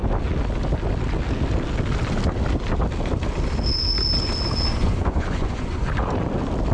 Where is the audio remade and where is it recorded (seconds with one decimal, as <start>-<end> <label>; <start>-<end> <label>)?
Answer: 0.0-4.7 recorded; 4.7-5.9 remade; 5.9-6.7 recorded